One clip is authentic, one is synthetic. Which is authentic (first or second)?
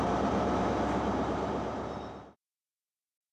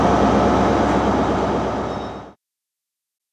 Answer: second